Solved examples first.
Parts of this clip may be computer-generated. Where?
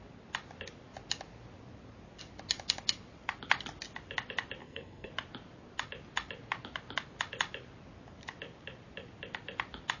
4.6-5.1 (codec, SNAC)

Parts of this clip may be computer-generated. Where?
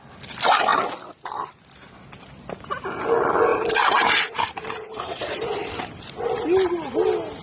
3.5-6.9 (vocoder, BigVGAN v2)